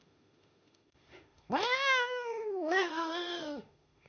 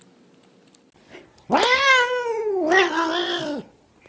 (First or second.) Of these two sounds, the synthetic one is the first